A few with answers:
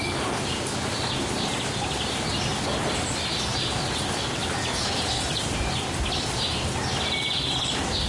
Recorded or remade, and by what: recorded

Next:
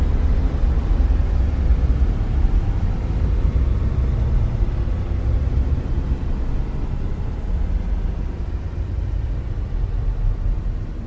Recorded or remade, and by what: recorded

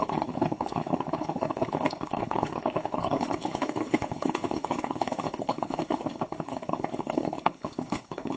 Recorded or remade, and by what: remade, codec, HILCodec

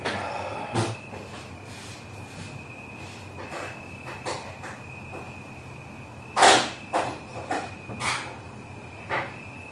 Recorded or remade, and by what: recorded